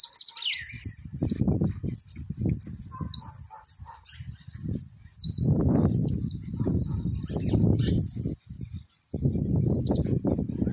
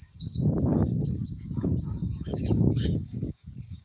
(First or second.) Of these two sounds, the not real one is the second